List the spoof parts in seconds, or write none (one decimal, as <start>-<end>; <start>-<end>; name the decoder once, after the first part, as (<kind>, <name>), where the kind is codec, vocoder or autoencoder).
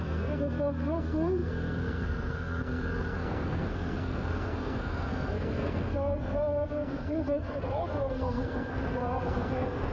0.0-9.9 (codec, SNAC)